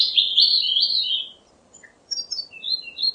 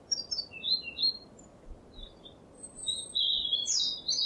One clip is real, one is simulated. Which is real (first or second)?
second